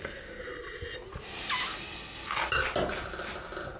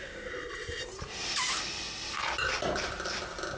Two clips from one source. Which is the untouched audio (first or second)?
first